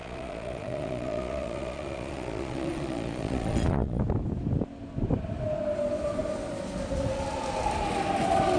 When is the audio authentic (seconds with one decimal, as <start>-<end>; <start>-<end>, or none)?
4.0-8.6